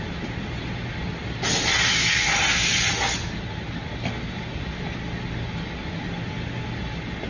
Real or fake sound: real